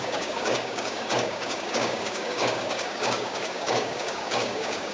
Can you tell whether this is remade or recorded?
remade